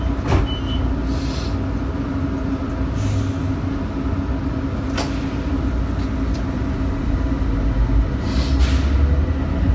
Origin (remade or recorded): recorded